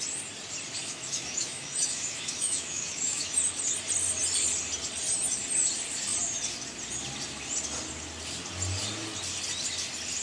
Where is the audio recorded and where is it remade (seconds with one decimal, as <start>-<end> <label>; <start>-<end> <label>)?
0.0-0.8 recorded; 0.8-3.3 remade; 3.3-10.2 recorded